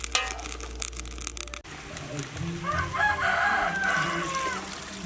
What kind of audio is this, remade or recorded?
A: recorded